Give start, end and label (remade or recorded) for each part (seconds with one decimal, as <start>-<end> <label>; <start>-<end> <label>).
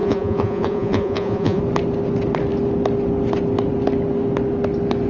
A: 0.0-1.6 remade; 1.6-5.1 recorded